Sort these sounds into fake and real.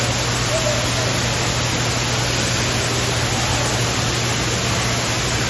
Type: real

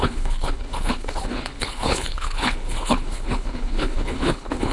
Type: fake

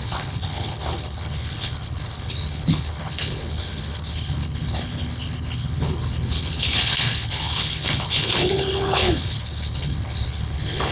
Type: fake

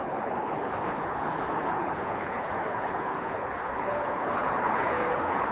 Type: fake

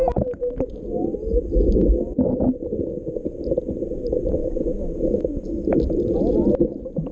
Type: real